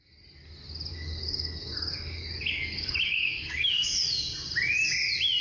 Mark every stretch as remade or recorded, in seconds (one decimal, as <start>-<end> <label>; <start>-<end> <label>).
0.0-0.9 recorded; 0.9-4.1 remade; 4.1-5.4 recorded